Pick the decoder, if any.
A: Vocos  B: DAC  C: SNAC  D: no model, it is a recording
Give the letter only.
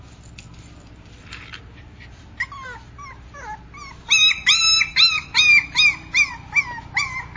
D